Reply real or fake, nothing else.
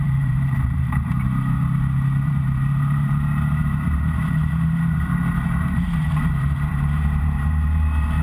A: fake